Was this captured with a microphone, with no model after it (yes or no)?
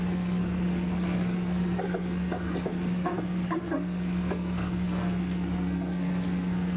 no